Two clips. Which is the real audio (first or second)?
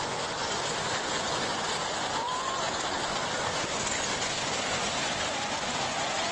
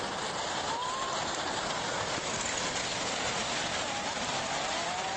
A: second